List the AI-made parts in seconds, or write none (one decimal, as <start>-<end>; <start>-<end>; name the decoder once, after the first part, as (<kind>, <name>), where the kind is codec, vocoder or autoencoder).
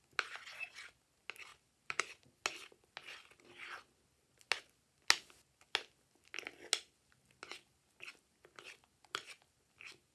1.5-2.0 (vocoder, BigVGAN v2)